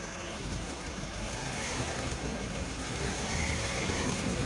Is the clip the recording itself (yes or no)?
no